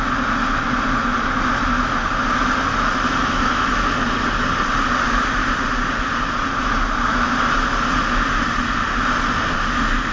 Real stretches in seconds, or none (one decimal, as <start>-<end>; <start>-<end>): 0.0-3.2; 3.9-10.1